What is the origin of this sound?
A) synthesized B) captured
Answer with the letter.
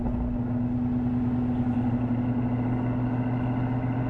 B